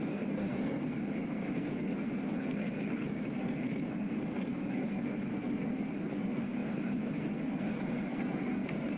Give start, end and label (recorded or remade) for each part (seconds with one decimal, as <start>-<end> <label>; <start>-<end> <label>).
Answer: 0.0-9.0 remade